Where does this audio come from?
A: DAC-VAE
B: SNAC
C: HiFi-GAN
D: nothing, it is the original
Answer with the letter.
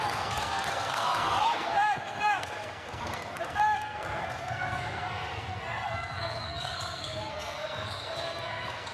B